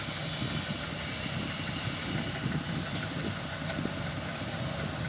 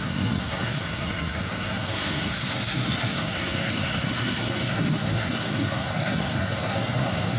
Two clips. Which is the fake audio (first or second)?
second